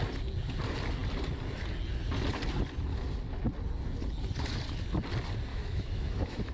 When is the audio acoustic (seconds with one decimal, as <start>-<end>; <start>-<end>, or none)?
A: 0.0-5.5